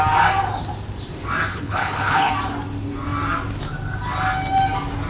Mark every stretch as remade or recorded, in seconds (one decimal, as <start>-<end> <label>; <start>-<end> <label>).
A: 0.0-1.5 recorded; 1.5-2.3 remade; 2.3-5.1 recorded